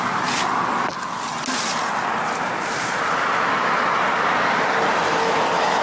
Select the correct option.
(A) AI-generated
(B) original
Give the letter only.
B